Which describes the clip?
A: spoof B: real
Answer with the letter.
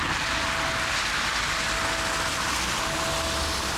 B